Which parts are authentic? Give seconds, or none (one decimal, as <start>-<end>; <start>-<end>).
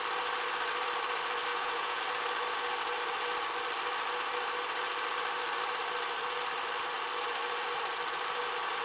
0.0-1.5; 2.0-8.8